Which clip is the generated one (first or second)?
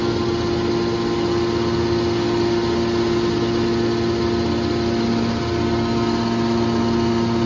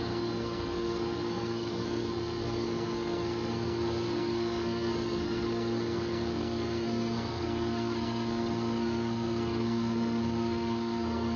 second